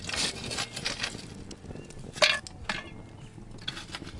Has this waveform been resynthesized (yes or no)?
no